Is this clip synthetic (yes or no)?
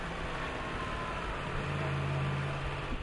no